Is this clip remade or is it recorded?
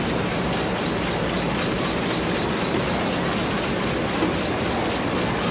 recorded